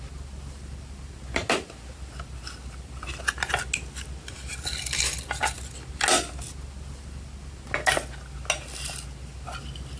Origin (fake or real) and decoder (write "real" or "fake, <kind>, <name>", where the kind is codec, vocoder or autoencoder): real